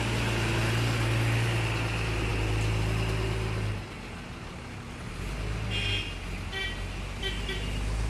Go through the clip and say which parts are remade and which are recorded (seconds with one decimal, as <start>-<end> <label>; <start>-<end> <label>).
0.0-8.1 recorded